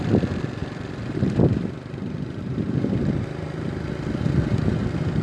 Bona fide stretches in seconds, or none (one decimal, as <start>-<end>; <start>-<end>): 0.0-0.6; 3.2-5.2